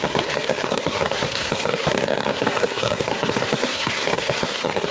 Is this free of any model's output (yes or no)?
no